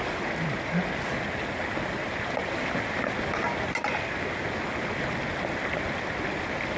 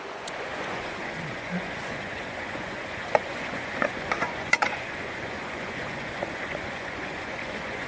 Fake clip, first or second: second